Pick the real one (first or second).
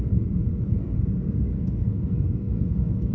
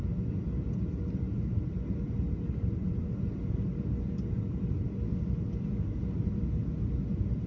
second